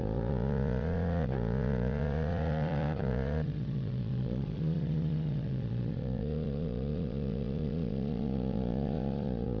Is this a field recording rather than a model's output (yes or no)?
no